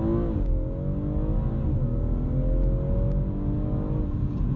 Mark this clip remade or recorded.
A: recorded